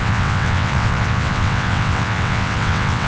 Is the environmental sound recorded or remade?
remade